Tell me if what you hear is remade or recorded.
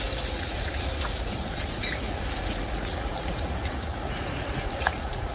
remade